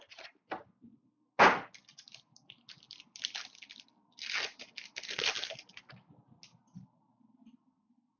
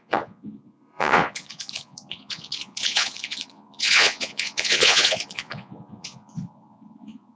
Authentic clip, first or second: first